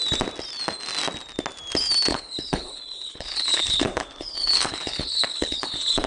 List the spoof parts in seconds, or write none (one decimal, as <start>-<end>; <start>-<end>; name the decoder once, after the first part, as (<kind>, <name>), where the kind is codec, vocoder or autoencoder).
2.1-6.1 (codec, HILCodec)

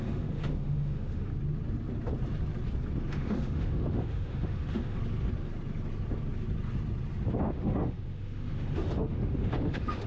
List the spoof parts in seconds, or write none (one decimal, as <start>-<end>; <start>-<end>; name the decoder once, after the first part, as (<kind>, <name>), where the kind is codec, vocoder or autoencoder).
0.0-1.3 (autoencoder, DAC-VAE); 3.1-5.0; 7.4-10.1